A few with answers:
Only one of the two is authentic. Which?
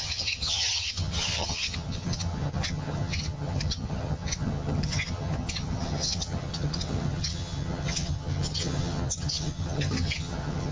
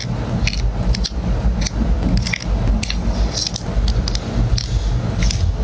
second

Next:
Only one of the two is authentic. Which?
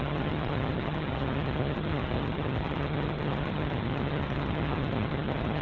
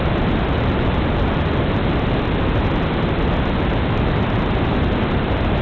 second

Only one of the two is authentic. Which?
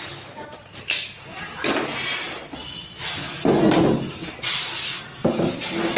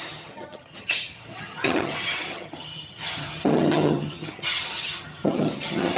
first